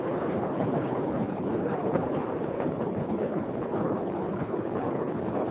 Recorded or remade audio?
remade